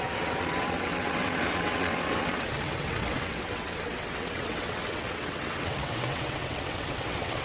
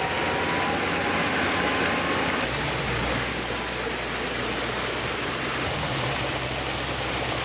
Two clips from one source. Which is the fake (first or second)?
first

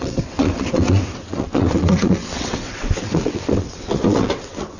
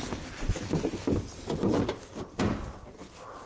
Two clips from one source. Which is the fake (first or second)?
first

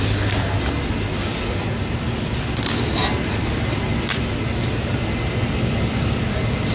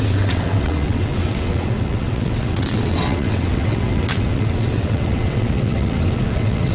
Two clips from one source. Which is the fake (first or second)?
second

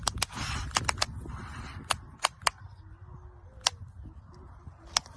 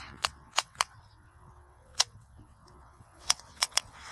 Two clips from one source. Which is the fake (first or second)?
second